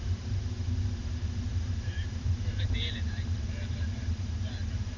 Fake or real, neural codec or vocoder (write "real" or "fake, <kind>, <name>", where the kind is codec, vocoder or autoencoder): fake, vocoder, BigVGAN v2